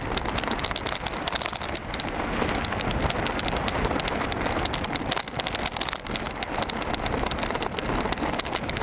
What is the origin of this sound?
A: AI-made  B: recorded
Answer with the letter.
B